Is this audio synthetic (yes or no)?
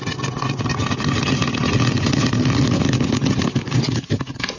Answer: no